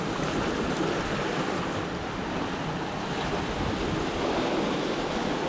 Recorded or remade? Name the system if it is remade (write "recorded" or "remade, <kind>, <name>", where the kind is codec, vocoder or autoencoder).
recorded